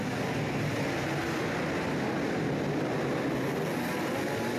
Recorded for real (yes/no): yes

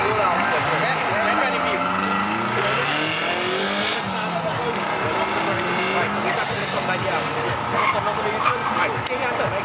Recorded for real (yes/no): yes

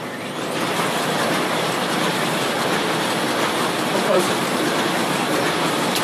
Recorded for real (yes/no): no